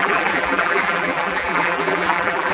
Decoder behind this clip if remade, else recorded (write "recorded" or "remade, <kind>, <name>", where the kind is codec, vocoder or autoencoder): remade, vocoder, BigVGAN v2